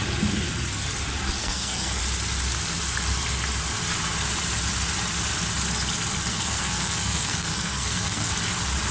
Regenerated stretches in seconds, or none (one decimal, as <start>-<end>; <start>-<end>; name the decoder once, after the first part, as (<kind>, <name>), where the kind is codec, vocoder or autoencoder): 1.4-2.0 (codec, SNAC); 6.3-8.3